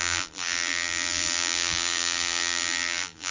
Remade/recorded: remade